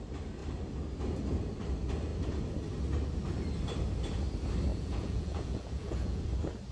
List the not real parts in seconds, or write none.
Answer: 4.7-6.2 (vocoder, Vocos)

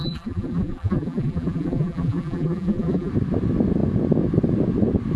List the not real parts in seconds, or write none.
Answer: 0.0-3.1 (vocoder, BigVGAN v2)

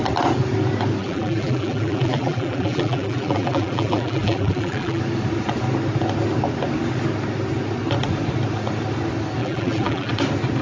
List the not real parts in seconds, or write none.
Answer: 1.0-5.0 (vocoder, BigVGAN v2); 9.4-10.1

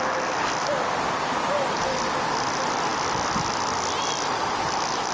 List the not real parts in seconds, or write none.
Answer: none

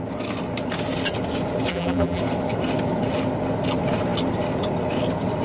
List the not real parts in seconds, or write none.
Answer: 1.7-2.2 (vocoder, BigVGAN v2)